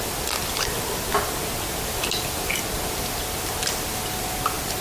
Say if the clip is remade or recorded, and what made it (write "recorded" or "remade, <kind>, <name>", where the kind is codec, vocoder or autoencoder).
recorded